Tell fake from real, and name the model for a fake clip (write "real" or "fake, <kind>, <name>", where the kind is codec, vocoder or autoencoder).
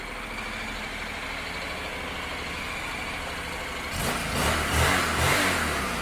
real